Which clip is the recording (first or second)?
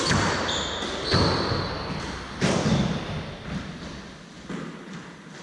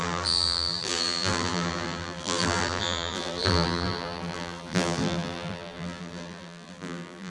first